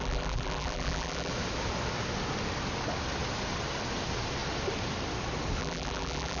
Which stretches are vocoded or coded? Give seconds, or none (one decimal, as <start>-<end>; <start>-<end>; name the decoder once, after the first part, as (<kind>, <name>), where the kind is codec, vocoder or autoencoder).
0.0-1.3 (vocoder, BigVGAN v2); 5.6-6.4